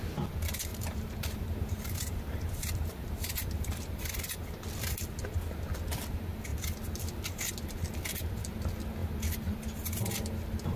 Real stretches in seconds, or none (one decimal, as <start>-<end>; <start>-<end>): 0.0-0.7; 4.4-10.8